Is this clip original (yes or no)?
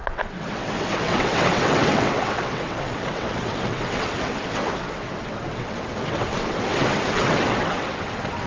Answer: no